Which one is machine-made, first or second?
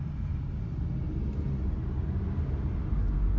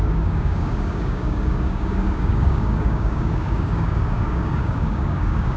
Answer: second